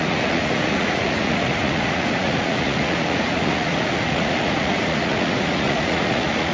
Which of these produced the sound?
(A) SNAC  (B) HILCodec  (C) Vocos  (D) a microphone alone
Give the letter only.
C